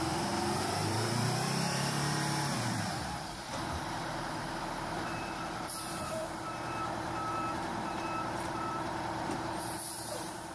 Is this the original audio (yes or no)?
no